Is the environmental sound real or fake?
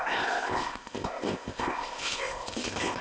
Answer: fake